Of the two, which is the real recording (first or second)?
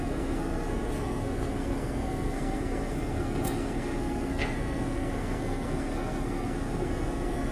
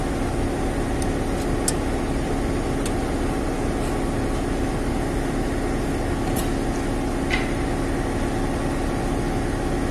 second